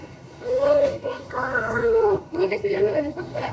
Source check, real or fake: fake